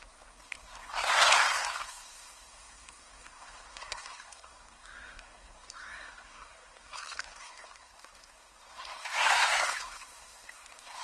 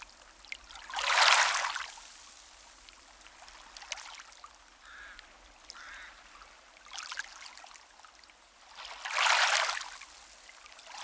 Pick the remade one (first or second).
first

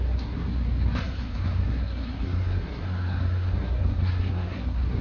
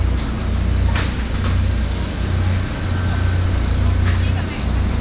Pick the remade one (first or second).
first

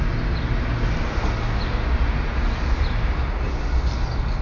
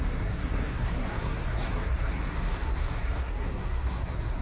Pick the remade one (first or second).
second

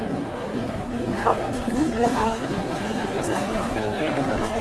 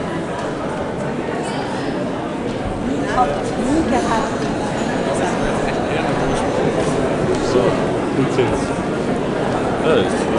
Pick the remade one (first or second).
first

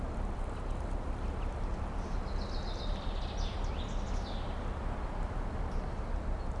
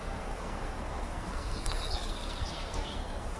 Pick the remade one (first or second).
second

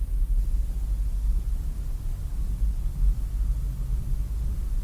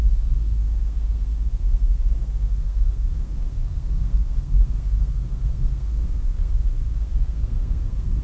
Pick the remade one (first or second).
second